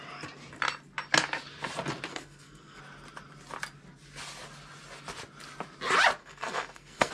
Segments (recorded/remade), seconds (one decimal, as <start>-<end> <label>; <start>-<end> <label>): 0.0-2.1 recorded; 2.1-2.8 remade; 2.8-6.2 recorded; 6.2-7.1 remade